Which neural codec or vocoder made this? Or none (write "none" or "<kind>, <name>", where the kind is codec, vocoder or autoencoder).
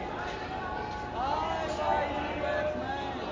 none